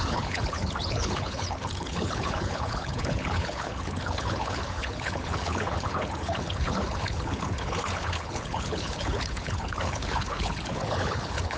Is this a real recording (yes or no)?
no